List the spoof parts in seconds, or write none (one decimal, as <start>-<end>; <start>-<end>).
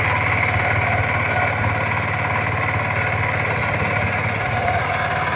3.6-4.9